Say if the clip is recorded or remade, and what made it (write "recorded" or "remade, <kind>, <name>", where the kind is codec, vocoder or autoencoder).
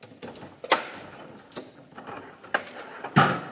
recorded